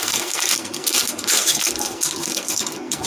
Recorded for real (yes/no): no